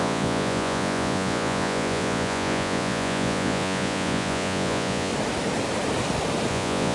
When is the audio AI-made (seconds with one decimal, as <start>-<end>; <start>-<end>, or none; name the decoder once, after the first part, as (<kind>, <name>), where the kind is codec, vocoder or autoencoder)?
0.0-5.1 (vocoder, Vocos); 6.5-6.9